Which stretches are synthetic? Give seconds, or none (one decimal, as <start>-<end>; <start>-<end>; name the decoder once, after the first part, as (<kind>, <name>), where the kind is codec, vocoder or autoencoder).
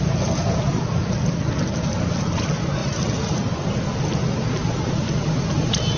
0.7-1.3 (vocoder, BigVGAN v2)